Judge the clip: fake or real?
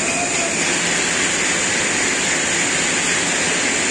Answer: real